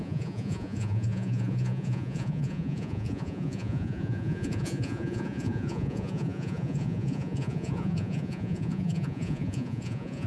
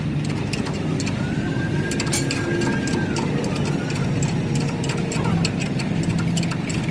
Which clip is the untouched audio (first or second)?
second